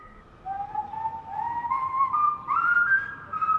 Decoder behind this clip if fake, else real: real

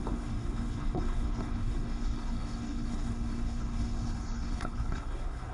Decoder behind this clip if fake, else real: fake, codec, HILCodec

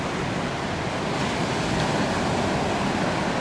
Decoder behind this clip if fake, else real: real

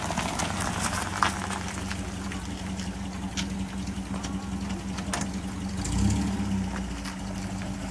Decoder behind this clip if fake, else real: real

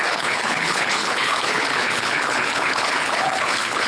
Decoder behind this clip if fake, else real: fake, codec, HILCodec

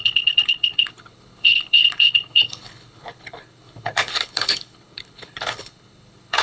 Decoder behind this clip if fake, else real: fake, codec, HILCodec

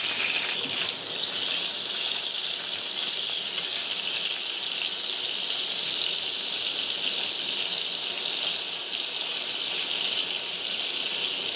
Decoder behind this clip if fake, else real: real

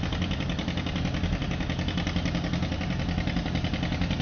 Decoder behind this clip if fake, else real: real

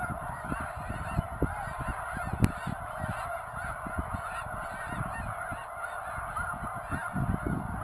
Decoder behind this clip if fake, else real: real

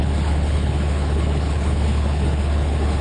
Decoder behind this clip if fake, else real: fake, codec, HILCodec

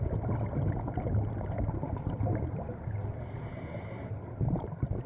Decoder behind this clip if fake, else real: real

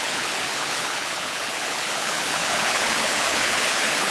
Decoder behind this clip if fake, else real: fake, codec, HILCodec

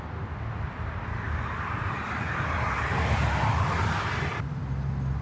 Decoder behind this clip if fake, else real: real